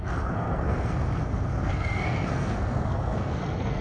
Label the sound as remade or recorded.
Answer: remade